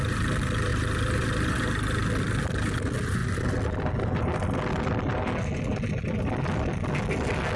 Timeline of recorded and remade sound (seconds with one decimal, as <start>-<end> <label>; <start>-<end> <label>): 0.0-7.6 recorded